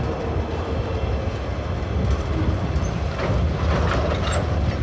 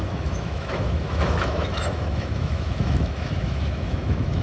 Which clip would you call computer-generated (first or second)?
second